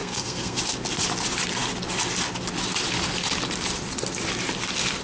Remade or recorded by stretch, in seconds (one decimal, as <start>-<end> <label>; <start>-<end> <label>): 0.0-0.6 remade; 0.6-5.0 recorded